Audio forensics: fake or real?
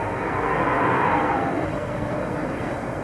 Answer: fake